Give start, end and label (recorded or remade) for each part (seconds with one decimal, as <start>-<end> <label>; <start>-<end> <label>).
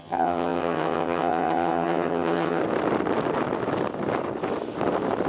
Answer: 0.0-2.6 remade; 2.6-5.3 recorded